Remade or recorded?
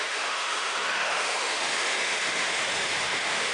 remade